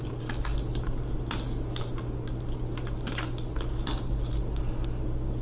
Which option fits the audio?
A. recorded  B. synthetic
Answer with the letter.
A